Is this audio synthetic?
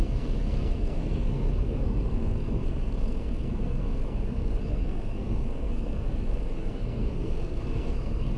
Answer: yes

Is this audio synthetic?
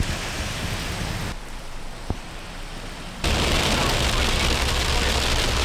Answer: no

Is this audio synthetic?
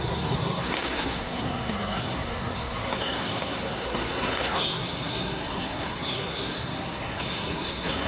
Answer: yes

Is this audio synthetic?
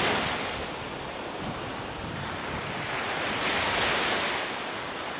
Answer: no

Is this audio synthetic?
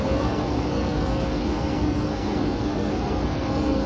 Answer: yes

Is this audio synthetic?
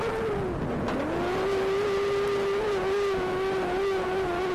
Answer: no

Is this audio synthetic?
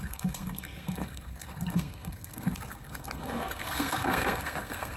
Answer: yes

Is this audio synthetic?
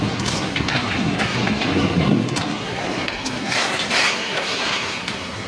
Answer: yes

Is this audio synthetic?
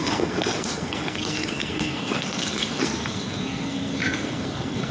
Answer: yes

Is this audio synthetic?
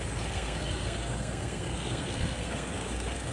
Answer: yes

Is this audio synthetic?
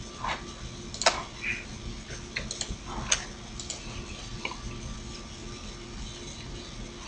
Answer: no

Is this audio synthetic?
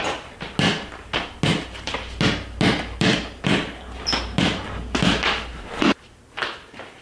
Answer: no